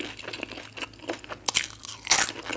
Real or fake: real